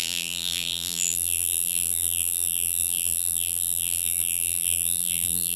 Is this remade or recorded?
remade